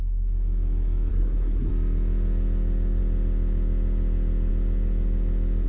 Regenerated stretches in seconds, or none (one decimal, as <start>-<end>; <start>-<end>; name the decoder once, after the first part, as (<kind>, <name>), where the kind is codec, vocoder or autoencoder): 1.1-1.7 (codec, SNAC)